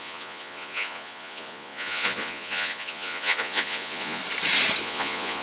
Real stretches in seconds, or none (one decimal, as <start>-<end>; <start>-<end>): 4.2-4.8